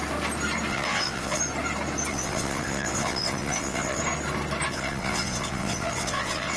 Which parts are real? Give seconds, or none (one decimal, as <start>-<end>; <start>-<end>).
0.0-0.7; 1.4-2.1; 4.0-4.7